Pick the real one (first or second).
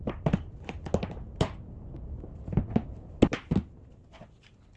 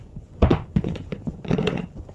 first